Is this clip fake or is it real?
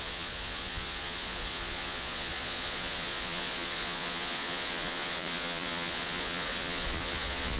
fake